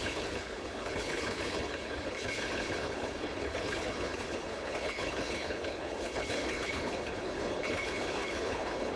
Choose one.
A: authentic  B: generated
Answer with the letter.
B